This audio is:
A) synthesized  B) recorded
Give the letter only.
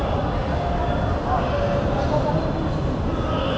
B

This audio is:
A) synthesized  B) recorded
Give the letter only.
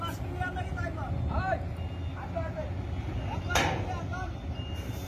B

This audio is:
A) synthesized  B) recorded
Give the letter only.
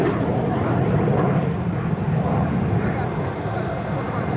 B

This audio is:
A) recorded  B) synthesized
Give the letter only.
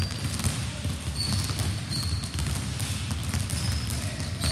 A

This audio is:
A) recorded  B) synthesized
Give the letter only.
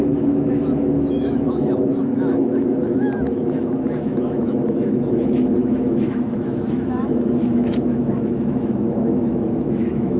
B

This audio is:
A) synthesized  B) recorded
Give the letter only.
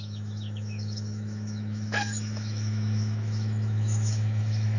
A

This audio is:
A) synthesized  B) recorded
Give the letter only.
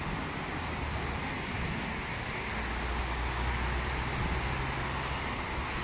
B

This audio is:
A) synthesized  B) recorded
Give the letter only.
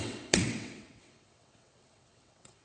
A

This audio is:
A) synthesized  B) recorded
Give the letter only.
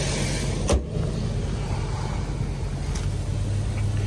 B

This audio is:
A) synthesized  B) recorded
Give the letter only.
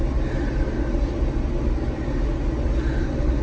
B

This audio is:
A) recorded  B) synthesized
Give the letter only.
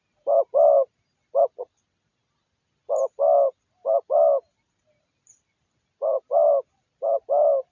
A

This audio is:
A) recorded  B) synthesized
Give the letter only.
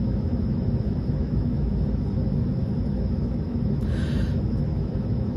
B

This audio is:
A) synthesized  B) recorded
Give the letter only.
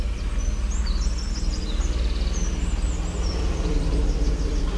B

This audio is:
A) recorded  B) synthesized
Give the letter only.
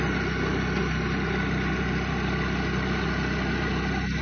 A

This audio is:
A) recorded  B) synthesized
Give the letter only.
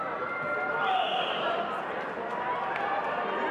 B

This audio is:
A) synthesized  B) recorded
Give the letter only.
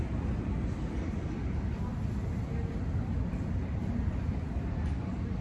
B